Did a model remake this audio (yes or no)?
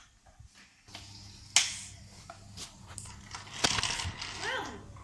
no